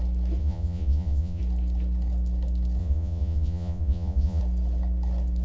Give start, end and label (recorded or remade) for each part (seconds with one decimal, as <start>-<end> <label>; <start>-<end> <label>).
0.0-0.4 recorded; 0.4-1.4 remade; 1.4-2.8 recorded; 2.8-4.4 remade; 4.4-5.4 recorded